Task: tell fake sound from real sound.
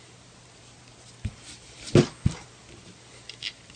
real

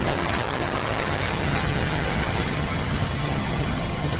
fake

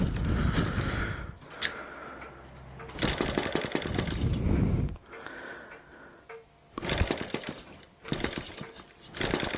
real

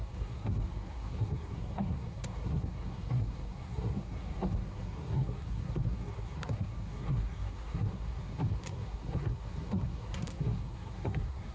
fake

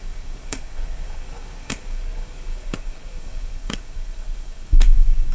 fake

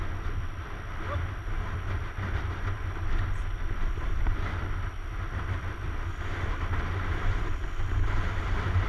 fake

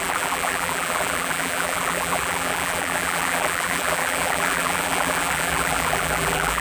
fake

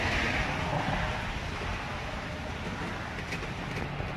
real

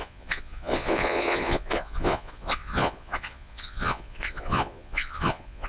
fake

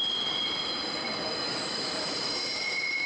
fake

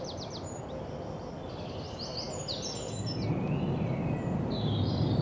real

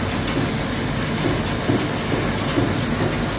real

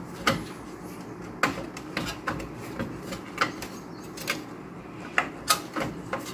real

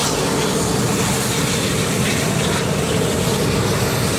real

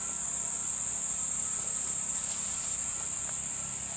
real